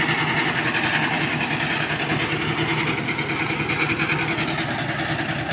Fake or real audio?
real